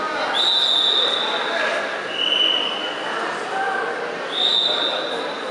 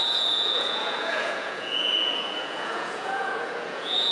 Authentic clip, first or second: first